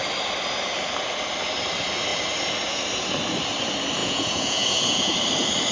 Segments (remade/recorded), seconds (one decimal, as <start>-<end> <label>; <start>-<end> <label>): 0.0-4.0 recorded; 4.0-5.1 remade; 5.1-5.7 recorded